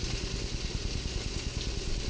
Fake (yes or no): no